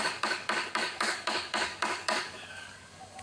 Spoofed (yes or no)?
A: yes